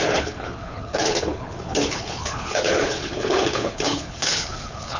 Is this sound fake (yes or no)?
yes